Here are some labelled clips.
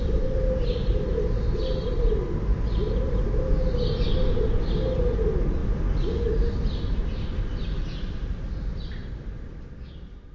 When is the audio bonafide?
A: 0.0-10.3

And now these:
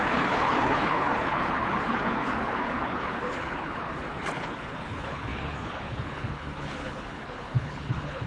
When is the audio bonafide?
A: none

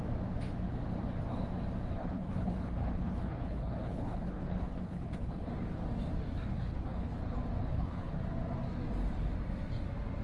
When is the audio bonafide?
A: 0.0-2.0; 5.5-6.5; 7.1-7.6; 8.2-10.2

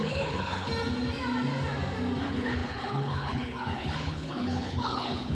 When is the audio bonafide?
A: 0.7-2.2

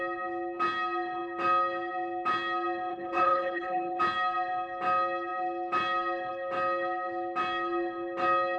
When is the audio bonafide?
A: 0.0-2.9; 4.0-8.6

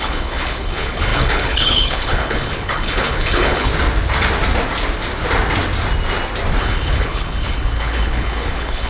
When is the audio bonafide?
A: 3.7-6.6

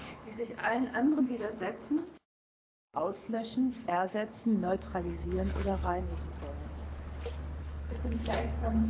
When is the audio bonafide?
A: 2.0-2.7; 6.1-7.6

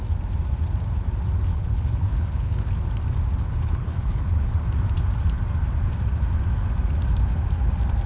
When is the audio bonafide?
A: 0.0-1.5; 2.7-3.4; 4.5-8.1